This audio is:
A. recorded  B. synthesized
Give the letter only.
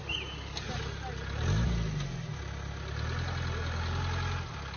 A